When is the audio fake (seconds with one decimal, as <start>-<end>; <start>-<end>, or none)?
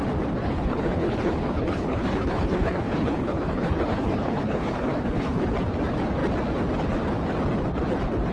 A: 0.4-5.4